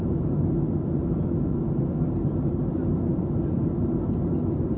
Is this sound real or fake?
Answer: real